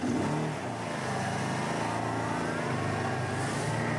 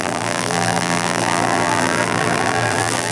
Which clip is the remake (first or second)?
second